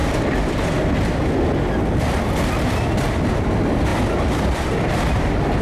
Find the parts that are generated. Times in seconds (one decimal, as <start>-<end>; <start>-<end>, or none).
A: none